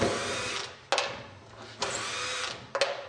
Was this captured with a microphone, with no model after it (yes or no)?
yes